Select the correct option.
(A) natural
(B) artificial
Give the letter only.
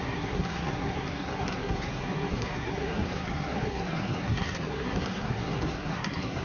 B